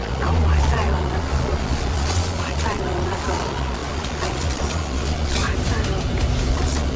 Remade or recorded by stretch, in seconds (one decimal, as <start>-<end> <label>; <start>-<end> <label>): 0.0-5.4 remade; 5.4-6.5 recorded; 6.5-7.0 remade